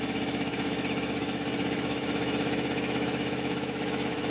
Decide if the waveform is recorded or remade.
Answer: remade